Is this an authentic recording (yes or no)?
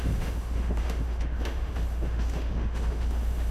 no